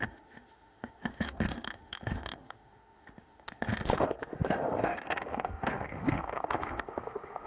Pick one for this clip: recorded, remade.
remade